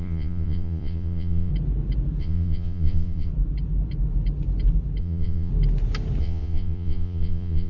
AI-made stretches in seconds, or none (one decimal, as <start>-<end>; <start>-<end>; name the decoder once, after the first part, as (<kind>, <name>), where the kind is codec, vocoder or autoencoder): 0.0-1.5 (vocoder, Vocos); 2.2-3.3; 5.0-5.5; 6.2-7.7